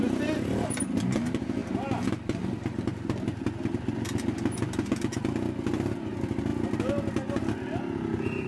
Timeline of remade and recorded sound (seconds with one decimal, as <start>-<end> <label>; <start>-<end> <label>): 0.0-8.5 recorded